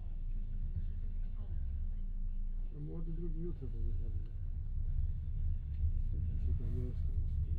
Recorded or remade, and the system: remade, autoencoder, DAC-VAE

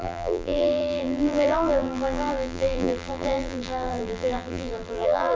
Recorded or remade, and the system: remade, vocoder, BigVGAN v2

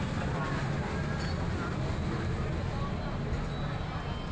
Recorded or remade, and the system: recorded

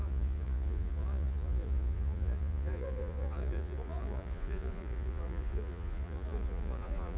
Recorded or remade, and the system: remade, vocoder, Vocos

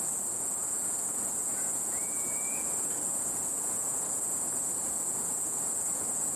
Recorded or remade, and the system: remade, vocoder, Vocos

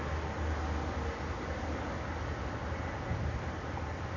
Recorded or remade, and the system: recorded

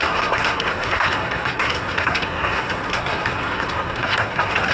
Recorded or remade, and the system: remade, codec, SNAC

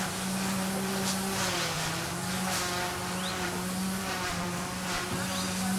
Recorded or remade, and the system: remade, vocoder, BigVGAN v2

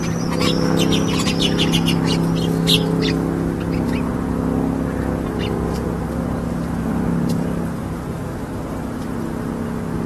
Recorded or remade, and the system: recorded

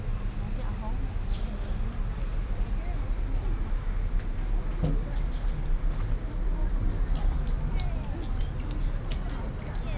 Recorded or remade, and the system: recorded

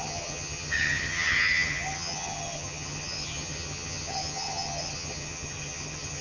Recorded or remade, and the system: remade, vocoder, HiFi-GAN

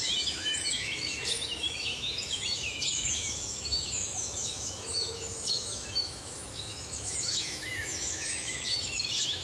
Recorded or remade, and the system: remade, autoencoder, DAC-VAE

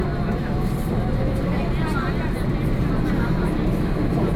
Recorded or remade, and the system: recorded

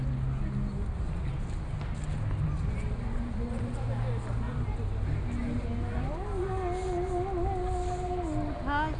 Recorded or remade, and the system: recorded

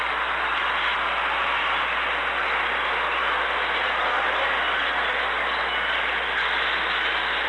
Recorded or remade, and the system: recorded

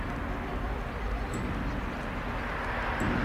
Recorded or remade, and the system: recorded